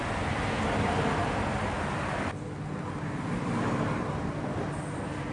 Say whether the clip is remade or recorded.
recorded